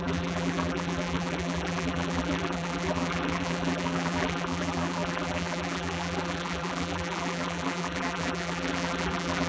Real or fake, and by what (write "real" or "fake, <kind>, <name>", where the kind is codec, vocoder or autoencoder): fake, vocoder, BigVGAN v2